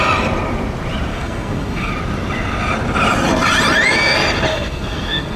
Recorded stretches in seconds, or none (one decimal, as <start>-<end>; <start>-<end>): 0.0-1.1; 1.9-4.5

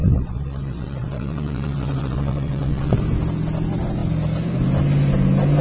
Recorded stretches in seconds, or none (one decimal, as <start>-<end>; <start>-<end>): 3.0-5.6

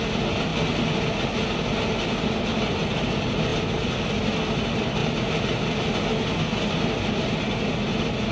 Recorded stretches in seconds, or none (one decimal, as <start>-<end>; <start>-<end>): 0.0-8.3

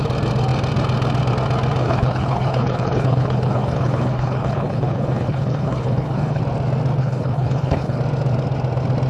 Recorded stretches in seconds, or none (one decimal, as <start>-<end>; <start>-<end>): 0.0-1.8; 6.4-7.0; 8.0-9.1

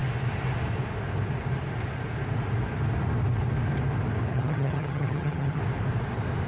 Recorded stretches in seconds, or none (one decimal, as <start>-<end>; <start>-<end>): 0.0-4.3; 5.6-6.5